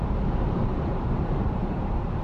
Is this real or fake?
fake